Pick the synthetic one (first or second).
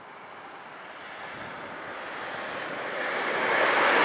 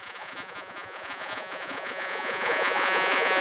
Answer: second